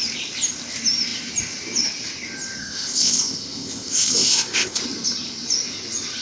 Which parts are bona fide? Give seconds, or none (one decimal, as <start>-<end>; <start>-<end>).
0.0-2.6; 4.8-6.2